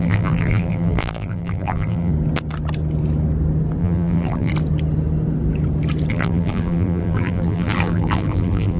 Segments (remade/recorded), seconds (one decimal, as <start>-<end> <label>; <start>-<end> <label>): 0.0-2.1 remade; 2.1-3.8 recorded; 3.8-4.5 remade; 4.5-6.1 recorded; 6.1-8.8 remade